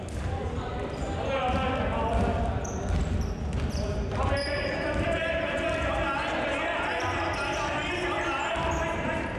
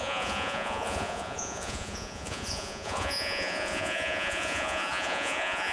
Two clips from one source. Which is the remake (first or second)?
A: second